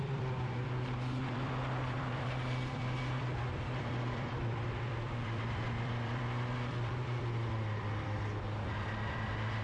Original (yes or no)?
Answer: no